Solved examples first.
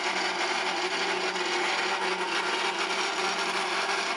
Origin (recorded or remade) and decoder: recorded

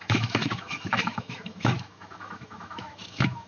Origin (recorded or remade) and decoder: remade, autoencoder, DAC-VAE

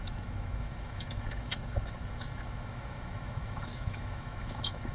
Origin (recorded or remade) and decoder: remade, autoencoder, DAC-VAE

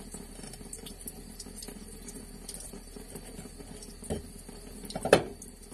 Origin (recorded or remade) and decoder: recorded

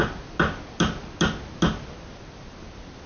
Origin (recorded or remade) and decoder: recorded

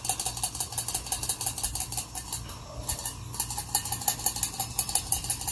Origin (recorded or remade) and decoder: recorded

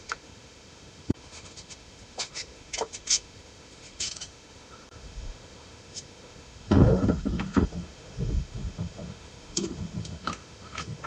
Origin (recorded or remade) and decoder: remade, autoencoder, DAC-VAE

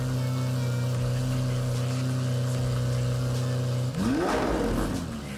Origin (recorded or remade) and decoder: recorded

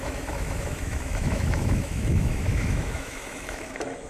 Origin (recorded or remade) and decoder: remade, autoencoder, DAC-VAE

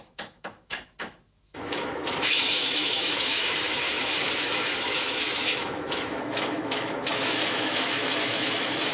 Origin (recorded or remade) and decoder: remade, autoencoder, DAC-VAE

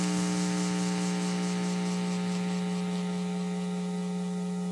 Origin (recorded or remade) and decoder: recorded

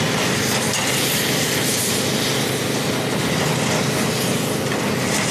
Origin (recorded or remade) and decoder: recorded